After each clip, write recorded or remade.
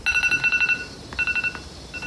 recorded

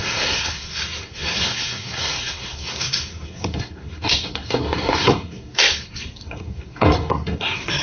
remade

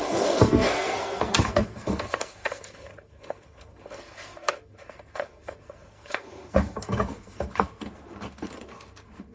remade